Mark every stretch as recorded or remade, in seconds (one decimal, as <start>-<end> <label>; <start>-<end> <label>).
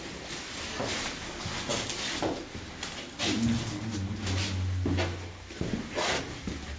0.0-6.8 recorded